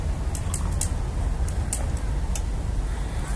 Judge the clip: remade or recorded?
recorded